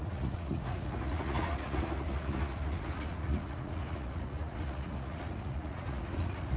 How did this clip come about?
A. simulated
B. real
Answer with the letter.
A